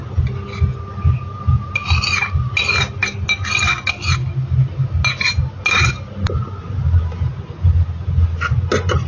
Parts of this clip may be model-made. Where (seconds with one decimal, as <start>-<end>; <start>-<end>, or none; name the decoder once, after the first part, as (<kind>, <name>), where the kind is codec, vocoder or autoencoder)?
none